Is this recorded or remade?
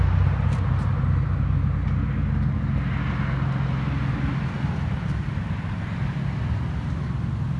recorded